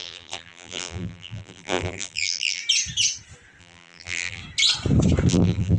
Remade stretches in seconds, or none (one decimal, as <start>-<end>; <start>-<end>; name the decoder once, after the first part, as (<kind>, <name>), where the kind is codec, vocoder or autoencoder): 0.0-2.6 (vocoder, BigVGAN v2); 3.6-4.4; 5.3-5.8